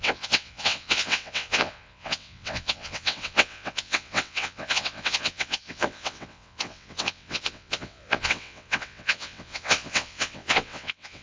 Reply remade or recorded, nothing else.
remade